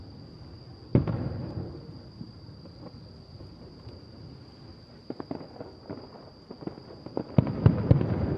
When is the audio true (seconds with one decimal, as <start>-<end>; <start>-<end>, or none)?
0.0-0.9; 1.6-8.4